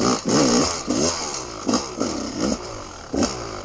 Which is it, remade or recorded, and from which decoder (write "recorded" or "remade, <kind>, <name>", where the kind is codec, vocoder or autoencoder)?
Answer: recorded